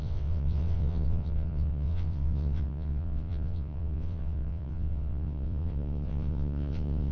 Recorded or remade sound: remade